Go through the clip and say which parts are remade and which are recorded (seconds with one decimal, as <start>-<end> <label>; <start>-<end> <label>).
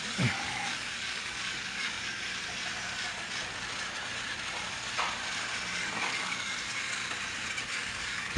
0.0-2.3 remade; 2.3-5.8 recorded; 5.8-7.0 remade; 7.0-7.7 recorded; 7.7-8.4 remade